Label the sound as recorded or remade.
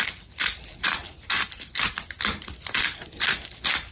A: recorded